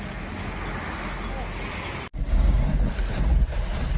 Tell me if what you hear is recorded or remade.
recorded